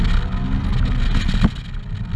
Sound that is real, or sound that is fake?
real